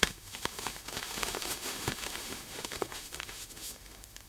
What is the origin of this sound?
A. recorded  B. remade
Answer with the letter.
B